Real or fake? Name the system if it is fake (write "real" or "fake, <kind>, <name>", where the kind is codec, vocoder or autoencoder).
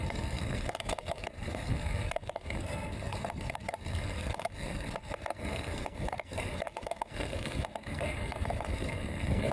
fake, codec, SNAC